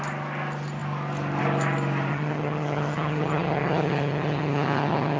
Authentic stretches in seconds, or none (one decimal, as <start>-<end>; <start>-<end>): 0.0-2.1